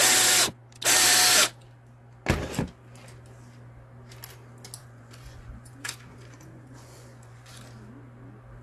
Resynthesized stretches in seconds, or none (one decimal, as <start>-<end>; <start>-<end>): 4.8-7.6